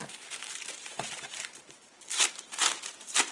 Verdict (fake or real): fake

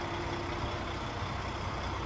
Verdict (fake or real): real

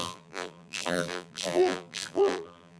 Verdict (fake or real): fake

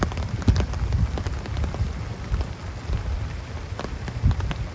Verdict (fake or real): real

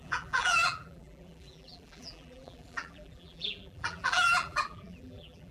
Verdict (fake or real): fake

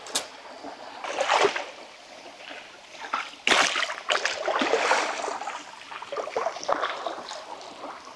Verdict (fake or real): real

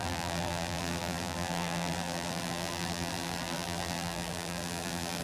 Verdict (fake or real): fake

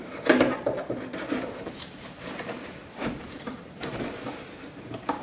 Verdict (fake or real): fake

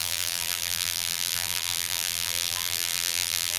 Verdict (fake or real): fake